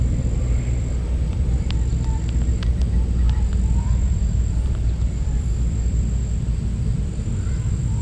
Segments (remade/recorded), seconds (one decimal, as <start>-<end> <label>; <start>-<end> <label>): 0.0-1.9 remade; 1.9-3.9 recorded; 3.9-6.2 remade; 6.2-6.9 recorded; 6.9-8.0 remade